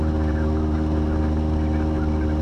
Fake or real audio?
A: real